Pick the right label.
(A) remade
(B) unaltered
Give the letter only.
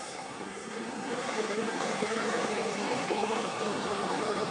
A